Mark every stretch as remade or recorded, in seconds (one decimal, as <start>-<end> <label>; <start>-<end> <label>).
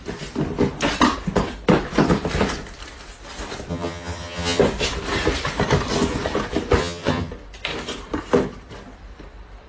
0.0-3.7 recorded; 3.7-4.6 remade; 4.6-6.8 recorded; 6.8-7.3 remade; 7.3-9.7 recorded